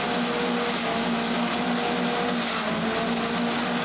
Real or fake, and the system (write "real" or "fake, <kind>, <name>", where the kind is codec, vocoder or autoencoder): real